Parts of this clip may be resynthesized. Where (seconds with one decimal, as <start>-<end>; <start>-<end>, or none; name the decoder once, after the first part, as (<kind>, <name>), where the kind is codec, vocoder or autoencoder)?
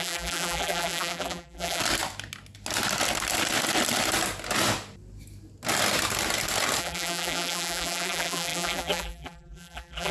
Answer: 0.0-1.8 (vocoder, BigVGAN v2); 6.8-10.1